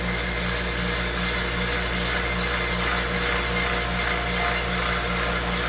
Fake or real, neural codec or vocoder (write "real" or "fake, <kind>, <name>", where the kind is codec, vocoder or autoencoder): real